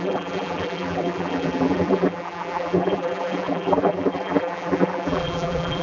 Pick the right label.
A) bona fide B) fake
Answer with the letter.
B